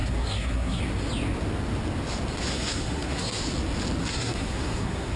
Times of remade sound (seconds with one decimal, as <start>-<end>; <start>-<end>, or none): 0.0-0.8; 2.5-3.4; 4.0-5.2